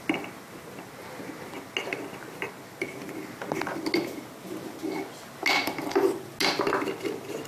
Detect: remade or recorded recorded